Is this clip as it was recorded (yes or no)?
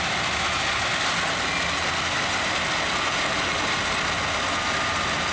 yes